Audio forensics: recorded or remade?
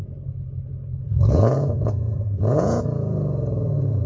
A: remade